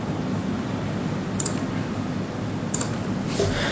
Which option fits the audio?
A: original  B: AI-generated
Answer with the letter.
A